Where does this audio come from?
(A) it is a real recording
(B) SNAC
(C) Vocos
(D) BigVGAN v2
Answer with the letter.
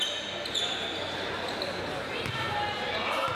A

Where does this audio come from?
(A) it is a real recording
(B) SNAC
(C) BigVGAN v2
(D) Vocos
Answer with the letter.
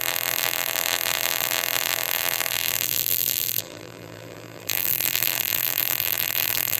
C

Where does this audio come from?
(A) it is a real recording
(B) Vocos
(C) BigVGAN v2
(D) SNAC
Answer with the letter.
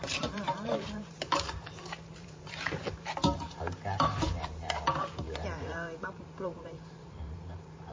C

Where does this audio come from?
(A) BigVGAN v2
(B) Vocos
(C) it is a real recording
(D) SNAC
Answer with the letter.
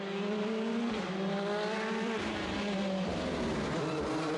A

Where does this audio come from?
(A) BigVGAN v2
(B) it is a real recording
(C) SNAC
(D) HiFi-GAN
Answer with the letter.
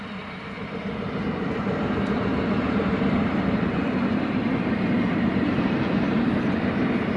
A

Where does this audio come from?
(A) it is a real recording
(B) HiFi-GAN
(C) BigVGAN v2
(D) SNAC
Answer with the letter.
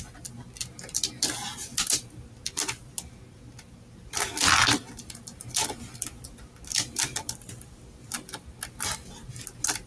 A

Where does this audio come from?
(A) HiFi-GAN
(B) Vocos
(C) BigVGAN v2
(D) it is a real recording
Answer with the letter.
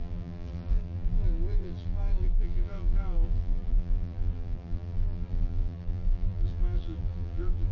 C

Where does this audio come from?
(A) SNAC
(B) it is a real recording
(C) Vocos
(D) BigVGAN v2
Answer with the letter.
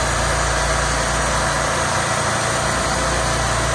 B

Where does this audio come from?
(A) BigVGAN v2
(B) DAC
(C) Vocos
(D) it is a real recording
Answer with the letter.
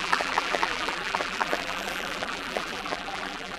A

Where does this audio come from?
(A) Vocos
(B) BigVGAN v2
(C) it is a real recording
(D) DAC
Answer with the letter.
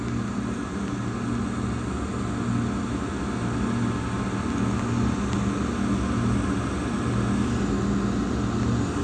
C